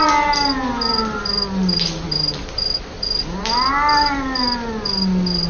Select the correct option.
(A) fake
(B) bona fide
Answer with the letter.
B